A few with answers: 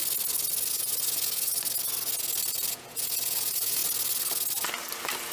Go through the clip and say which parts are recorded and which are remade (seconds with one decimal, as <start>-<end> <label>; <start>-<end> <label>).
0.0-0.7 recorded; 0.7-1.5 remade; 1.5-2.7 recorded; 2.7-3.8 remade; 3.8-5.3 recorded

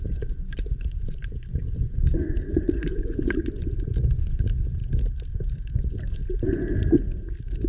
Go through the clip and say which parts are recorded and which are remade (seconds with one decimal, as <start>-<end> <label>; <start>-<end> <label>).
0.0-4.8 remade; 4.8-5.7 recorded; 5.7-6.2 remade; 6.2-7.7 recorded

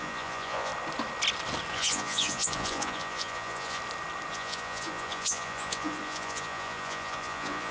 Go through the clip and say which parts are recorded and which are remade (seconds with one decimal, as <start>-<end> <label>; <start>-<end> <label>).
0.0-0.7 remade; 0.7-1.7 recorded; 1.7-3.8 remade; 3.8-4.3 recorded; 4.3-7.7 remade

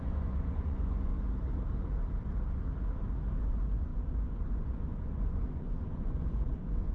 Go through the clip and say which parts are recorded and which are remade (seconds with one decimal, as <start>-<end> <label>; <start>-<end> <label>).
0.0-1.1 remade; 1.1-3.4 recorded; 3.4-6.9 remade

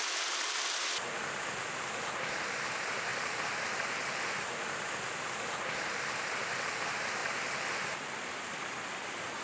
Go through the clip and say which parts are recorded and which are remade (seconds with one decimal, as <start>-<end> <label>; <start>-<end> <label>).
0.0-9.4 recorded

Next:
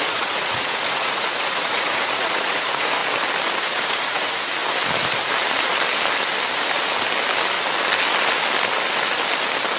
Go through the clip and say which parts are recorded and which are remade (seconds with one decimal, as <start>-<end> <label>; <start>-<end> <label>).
0.0-3.0 remade; 3.0-3.6 recorded; 3.6-4.5 remade; 4.5-9.8 recorded